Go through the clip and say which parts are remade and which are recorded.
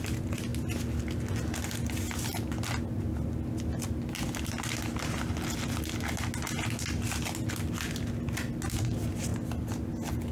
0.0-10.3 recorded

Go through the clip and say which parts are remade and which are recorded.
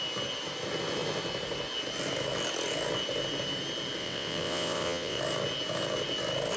0.0-4.0 recorded; 4.0-5.2 remade; 5.2-6.6 recorded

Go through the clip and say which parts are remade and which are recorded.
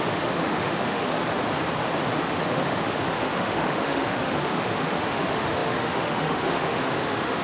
0.0-1.2 remade; 1.2-2.2 recorded; 2.2-7.4 remade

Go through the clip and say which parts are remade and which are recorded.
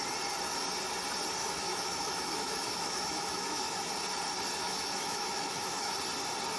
0.0-1.4 recorded; 1.4-3.9 remade; 3.9-4.6 recorded; 4.6-5.9 remade; 5.9-6.6 recorded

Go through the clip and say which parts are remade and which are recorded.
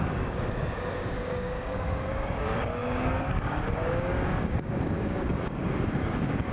0.0-6.5 remade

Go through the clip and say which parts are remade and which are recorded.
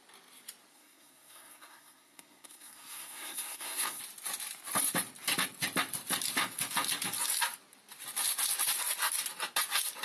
0.0-0.7 recorded; 0.7-4.0 remade; 4.0-10.0 recorded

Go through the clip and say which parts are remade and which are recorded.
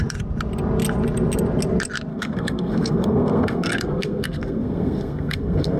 0.0-2.1 recorded; 2.1-5.8 remade